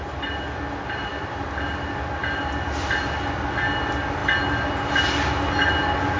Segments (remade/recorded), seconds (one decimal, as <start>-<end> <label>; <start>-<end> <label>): 0.0-6.2 recorded